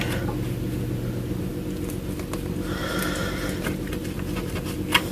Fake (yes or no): no